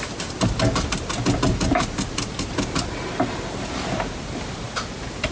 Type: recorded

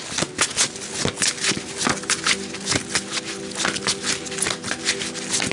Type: recorded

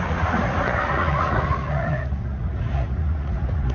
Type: remade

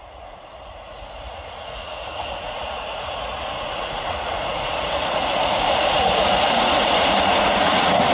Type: remade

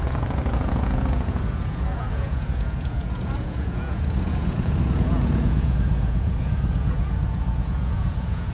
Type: remade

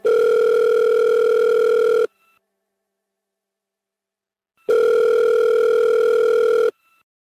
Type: recorded